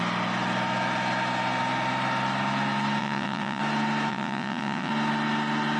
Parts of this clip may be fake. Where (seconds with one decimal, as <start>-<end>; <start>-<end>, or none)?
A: 3.0-3.6; 4.1-4.9